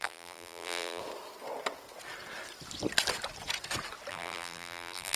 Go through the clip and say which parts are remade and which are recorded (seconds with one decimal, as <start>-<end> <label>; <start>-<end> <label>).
0.0-1.0 remade; 1.0-4.1 recorded; 4.1-5.2 remade